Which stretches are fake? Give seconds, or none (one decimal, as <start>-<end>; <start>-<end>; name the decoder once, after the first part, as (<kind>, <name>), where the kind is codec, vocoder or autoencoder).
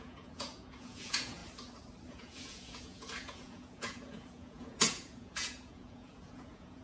0.0-1.4 (vocoder, Vocos); 2.1-6.8